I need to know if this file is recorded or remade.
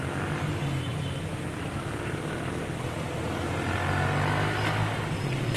recorded